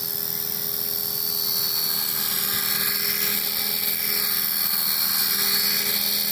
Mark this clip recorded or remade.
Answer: recorded